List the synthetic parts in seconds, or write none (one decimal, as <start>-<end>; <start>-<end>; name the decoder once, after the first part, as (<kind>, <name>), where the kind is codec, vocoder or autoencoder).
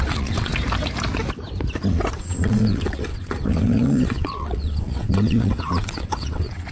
0.0-0.5 (vocoder, WaveNeXt); 2.2-6.7